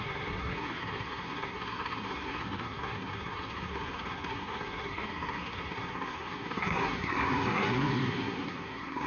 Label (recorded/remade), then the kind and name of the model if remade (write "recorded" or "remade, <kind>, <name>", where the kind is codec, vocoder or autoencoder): remade, codec, SNAC